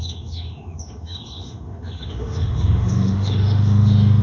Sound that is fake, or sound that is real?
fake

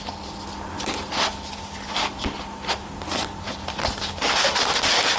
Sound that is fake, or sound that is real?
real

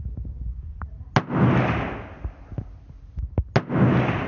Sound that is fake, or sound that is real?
real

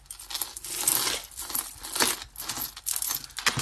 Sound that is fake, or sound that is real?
real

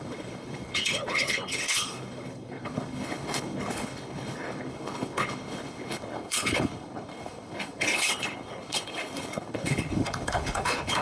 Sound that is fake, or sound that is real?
fake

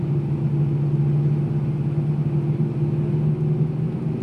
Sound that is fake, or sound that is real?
real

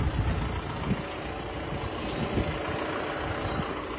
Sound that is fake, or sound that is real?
real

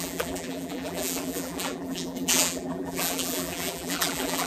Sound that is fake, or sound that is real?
fake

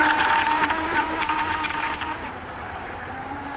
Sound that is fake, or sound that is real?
fake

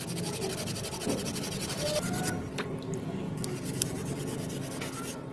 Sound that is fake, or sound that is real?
real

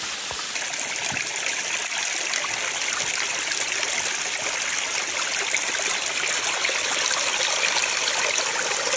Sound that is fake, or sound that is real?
real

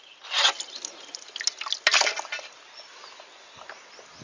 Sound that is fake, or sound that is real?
real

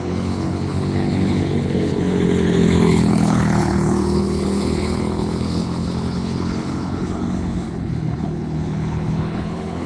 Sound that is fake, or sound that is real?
fake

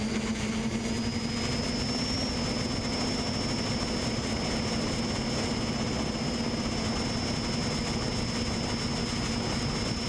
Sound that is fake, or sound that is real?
real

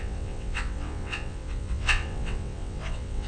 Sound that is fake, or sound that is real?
fake